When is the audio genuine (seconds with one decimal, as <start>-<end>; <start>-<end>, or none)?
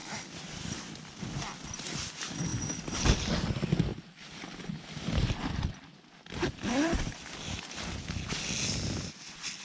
0.0-9.6